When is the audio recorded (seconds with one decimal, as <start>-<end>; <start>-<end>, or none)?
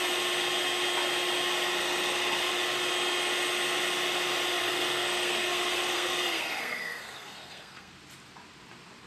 0.0-1.8; 2.5-4.6; 7.9-9.1